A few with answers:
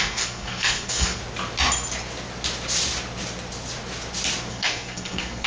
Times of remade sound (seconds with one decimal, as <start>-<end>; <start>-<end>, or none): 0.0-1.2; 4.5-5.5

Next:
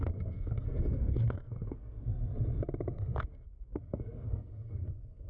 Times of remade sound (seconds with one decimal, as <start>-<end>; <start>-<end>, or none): 0.0-2.3; 3.2-5.3

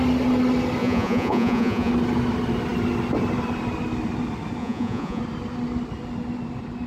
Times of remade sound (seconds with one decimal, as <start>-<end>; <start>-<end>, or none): 0.8-1.9; 4.6-5.2

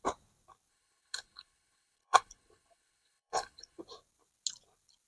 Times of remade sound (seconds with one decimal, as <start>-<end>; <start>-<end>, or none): 0.7-3.8

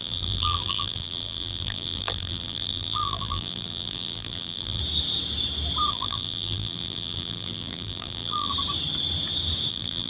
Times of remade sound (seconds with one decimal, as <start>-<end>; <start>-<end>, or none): 0.0-4.8; 5.9-8.5; 9.7-10.1

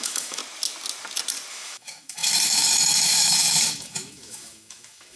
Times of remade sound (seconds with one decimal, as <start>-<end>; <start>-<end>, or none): 0.0-0.4; 1.5-5.2